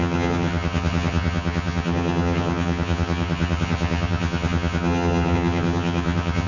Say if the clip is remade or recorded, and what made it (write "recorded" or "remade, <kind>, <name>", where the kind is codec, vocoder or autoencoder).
remade, vocoder, HiFi-GAN